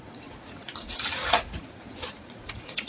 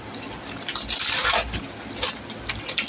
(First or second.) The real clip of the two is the second